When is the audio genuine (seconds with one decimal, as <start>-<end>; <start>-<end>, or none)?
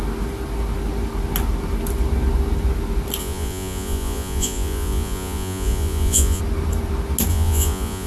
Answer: 0.0-3.2; 6.4-7.3